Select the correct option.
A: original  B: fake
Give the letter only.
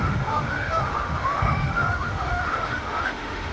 B